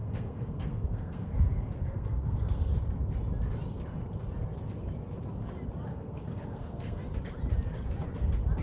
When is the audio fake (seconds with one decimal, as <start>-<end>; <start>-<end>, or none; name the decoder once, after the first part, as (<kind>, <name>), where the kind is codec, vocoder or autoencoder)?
0.0-2.7 (codec, SNAC); 5.9-7.0